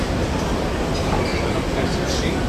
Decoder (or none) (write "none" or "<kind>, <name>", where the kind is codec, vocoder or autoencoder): none